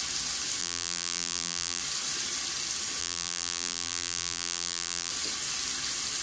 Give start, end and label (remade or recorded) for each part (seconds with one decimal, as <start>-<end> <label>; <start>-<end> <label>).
0.0-0.6 recorded; 0.6-1.8 remade; 1.8-3.0 recorded; 3.0-5.1 remade; 5.1-6.2 recorded